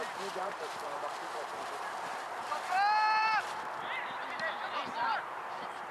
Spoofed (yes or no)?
yes